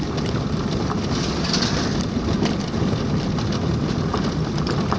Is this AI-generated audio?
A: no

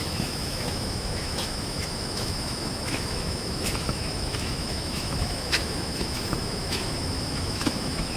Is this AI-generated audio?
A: yes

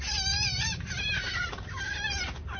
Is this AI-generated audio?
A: no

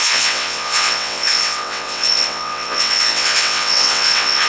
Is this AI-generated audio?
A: yes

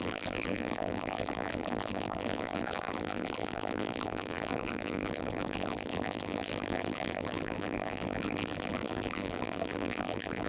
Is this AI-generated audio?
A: yes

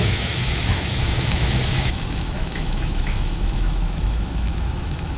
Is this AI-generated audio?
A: yes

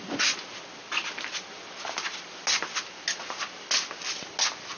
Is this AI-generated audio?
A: no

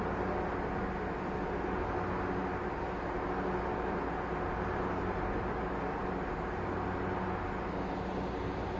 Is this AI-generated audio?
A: no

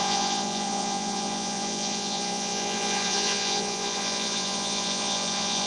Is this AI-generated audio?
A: yes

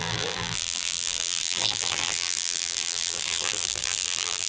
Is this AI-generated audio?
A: yes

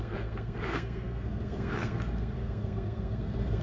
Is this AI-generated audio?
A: yes